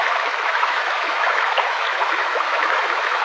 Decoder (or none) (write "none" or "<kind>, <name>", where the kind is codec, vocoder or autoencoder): autoencoder, DAC-VAE